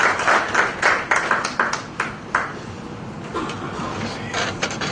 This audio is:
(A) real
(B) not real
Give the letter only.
A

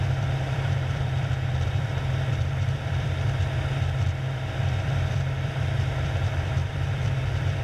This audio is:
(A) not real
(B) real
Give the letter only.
A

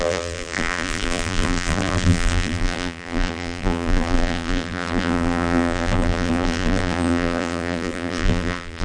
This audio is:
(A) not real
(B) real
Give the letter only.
A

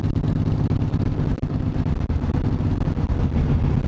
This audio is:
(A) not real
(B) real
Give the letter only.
B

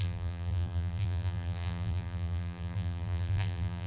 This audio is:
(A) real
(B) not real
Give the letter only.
B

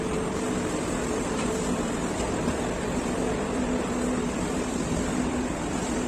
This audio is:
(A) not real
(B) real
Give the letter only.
A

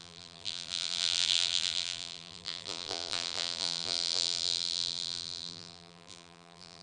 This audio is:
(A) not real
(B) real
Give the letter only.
A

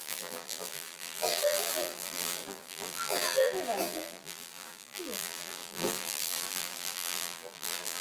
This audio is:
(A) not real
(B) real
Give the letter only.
A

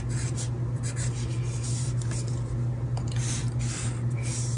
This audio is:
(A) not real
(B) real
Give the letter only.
B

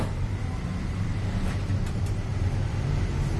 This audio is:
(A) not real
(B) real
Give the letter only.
A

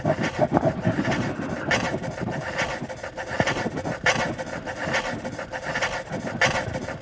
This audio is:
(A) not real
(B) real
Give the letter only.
A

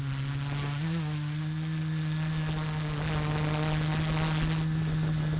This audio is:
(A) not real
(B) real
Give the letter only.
B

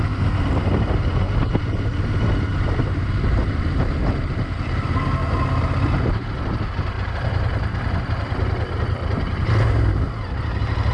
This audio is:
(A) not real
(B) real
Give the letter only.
A